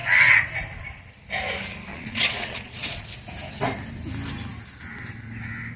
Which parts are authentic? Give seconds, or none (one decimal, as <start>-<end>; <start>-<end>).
0.0-1.9; 3.1-5.8